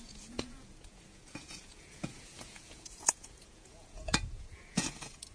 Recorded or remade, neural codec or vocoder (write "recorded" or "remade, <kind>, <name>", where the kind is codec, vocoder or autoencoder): remade, vocoder, Vocos